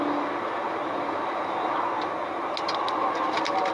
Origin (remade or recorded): recorded